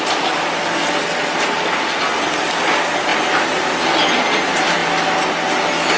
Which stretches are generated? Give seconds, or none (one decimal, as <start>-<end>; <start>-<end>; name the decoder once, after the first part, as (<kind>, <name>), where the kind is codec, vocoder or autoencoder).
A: 1.0-1.6 (vocoder, BigVGAN v2); 3.1-3.7